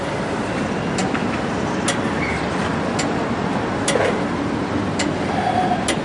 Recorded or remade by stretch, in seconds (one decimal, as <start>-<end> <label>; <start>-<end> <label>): 0.0-6.0 recorded